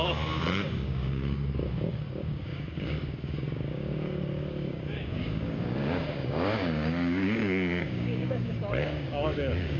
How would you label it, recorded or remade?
remade